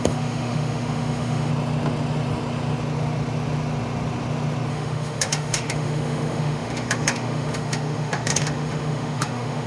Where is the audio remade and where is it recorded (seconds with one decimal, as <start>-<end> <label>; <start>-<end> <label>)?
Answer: 0.0-1.5 remade; 1.5-4.7 recorded; 4.7-9.7 remade